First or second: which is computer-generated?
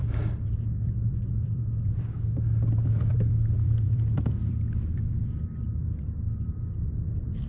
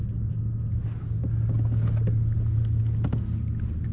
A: first